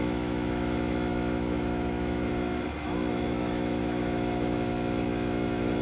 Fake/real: fake